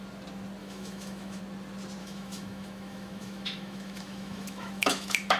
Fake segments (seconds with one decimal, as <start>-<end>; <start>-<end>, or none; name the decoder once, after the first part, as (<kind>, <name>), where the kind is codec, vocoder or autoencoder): 0.6-1.4 (autoencoder, DAC-VAE); 2.0-5.4